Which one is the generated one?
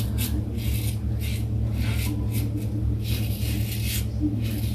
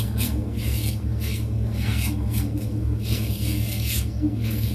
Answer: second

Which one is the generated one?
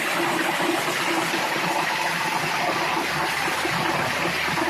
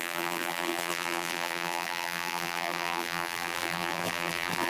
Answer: second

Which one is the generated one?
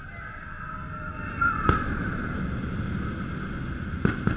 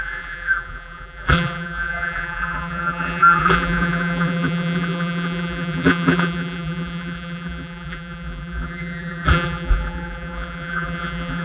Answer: second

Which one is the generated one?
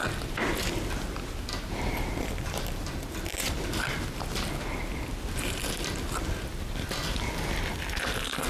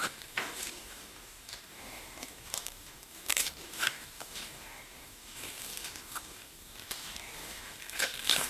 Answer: second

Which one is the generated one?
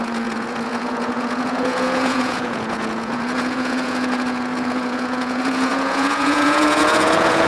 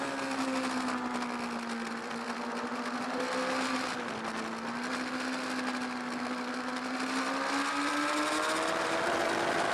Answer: first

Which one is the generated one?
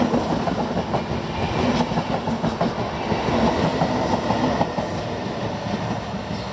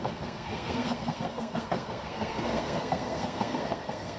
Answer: second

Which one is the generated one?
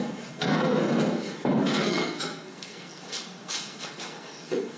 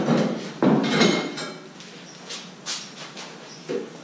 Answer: first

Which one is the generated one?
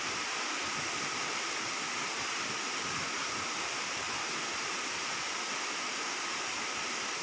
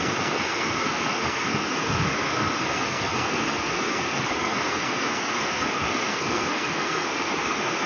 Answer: second